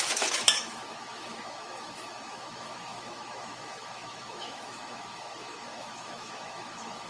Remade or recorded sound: remade